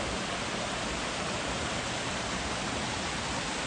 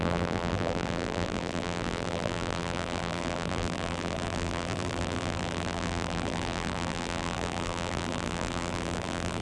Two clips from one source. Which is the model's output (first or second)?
second